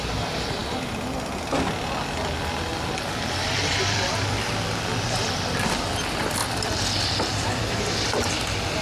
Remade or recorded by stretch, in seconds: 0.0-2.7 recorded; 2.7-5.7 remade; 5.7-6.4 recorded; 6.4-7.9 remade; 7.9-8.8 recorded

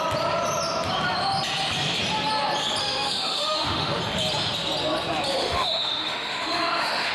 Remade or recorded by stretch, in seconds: 0.0-2.8 recorded; 2.8-4.0 remade; 4.0-5.4 recorded; 5.4-7.1 remade

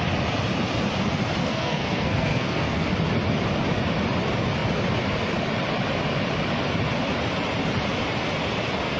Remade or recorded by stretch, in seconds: 0.0-1.4 recorded; 1.4-2.9 remade; 2.9-9.0 recorded

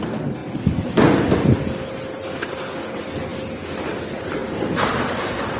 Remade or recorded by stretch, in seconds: 0.0-5.6 recorded

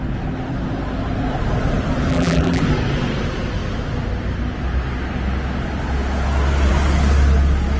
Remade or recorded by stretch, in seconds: 0.0-2.1 recorded; 2.1-2.6 remade; 2.6-7.8 recorded

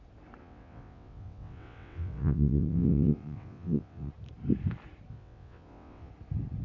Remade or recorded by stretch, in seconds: 0.0-0.4 recorded; 0.4-4.1 remade; 4.1-5.1 recorded; 5.1-6.1 remade; 6.1-6.6 recorded